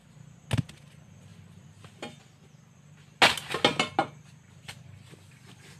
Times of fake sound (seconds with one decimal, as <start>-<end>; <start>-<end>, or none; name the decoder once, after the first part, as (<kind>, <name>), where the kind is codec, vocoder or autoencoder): none